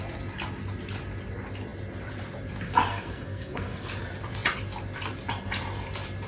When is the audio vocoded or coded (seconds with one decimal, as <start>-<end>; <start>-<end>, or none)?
2.9-3.9